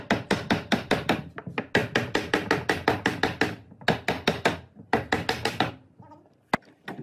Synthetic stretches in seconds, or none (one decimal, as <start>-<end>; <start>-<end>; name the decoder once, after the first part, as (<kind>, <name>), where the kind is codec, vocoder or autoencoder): none